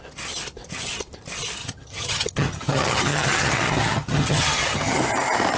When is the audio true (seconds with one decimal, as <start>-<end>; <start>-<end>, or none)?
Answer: 0.0-1.6; 5.0-5.6